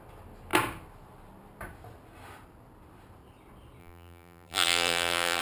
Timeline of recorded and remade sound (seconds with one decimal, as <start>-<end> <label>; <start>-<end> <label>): 0.0-3.8 recorded; 3.8-5.4 remade